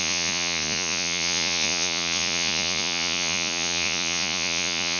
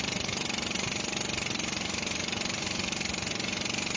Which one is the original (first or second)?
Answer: second